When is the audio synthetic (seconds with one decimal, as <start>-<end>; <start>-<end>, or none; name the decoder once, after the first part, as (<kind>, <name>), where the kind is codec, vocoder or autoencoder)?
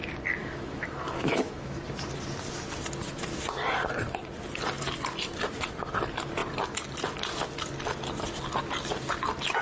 0.4-1.8 (autoencoder, DAC-VAE)